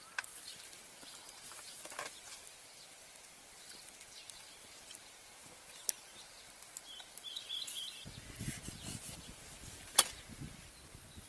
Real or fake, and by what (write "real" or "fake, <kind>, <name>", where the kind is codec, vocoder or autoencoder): real